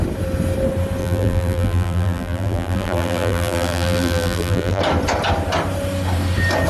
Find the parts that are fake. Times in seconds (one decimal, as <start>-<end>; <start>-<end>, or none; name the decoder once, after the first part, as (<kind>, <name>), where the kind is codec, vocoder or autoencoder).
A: 1.0-4.8 (vocoder, BigVGAN v2)